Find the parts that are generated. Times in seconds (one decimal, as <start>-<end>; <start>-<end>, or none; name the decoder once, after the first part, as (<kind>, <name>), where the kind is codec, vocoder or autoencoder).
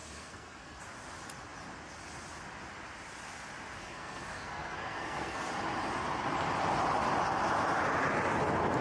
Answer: 0.0-0.8 (codec, SNAC); 3.8-5.5